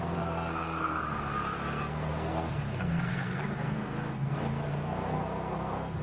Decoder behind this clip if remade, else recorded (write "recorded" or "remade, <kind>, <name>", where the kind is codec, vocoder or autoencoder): remade, codec, SNAC